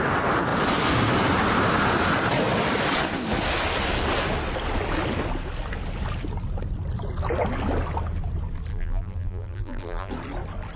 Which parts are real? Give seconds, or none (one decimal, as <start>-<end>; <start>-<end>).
0.0-8.7; 10.1-10.8